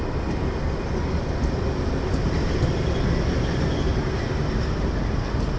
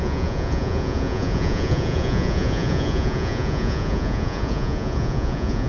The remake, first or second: second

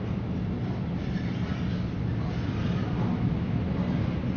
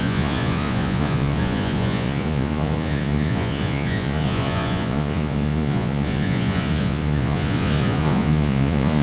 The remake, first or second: second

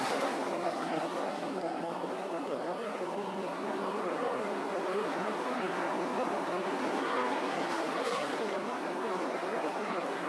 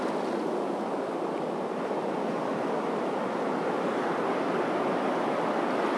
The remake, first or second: first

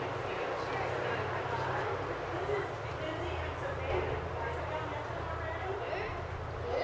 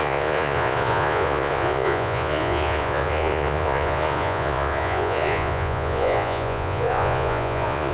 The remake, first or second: second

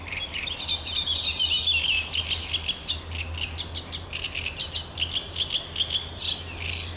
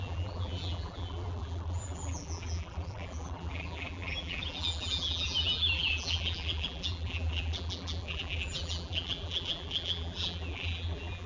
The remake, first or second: second